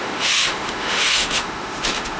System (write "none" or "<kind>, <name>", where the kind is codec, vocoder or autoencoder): autoencoder, DAC-VAE